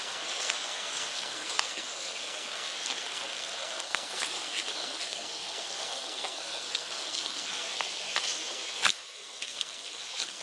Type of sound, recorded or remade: remade